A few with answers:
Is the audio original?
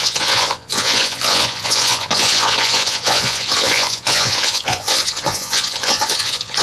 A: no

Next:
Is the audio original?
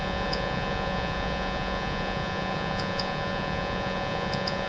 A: no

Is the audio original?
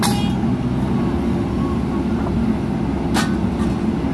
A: yes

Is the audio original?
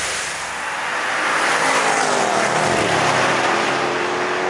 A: yes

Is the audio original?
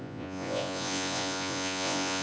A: no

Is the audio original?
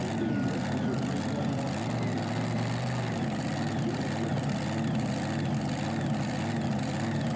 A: yes